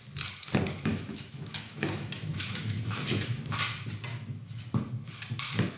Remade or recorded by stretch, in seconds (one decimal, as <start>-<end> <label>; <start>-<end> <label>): 0.0-0.9 recorded; 0.9-3.4 remade; 3.4-4.1 recorded; 4.1-4.6 remade; 4.6-5.8 recorded